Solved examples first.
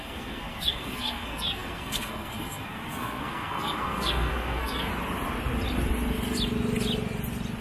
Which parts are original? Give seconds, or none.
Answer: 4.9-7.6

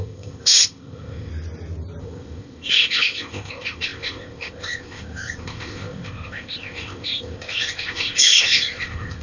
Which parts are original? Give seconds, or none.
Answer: 1.3-2.0

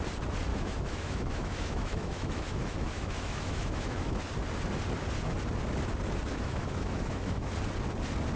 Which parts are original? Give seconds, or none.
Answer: 0.0-0.5; 4.2-6.3; 7.5-8.4

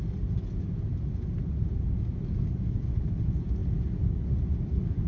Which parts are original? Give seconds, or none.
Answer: 0.0-5.1

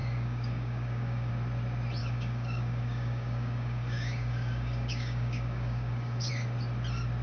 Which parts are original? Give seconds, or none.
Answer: 1.3-2.0; 6.3-7.2